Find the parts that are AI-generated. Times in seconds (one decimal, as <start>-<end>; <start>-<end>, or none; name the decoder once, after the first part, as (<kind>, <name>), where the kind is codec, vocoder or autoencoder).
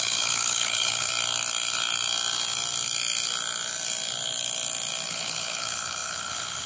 0.0-1.1 (codec, HILCodec); 5.1-6.7